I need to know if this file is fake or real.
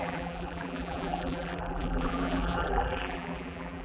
fake